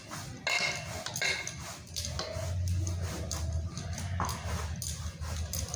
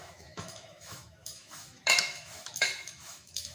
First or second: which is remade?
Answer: second